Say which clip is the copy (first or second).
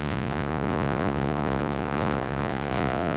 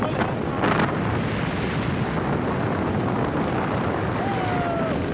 first